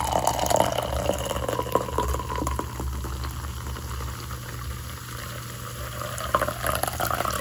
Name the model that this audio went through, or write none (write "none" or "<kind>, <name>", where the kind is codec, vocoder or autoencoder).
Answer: none